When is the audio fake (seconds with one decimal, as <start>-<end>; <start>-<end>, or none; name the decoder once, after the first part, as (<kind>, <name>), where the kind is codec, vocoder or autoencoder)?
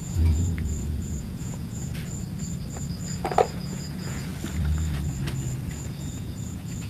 0.0-1.9 (vocoder, Vocos); 3.5-4.3; 5.9-6.9